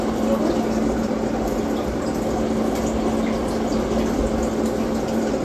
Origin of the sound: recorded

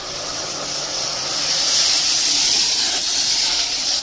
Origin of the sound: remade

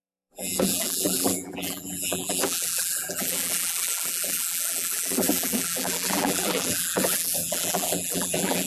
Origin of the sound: remade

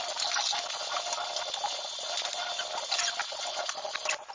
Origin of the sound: recorded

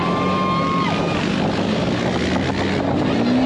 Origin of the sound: recorded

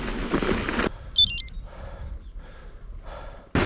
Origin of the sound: recorded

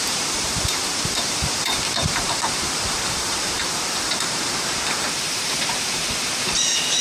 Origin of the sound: remade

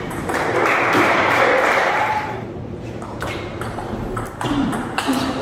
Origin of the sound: remade